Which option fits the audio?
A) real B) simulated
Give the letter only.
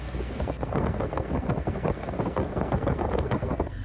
B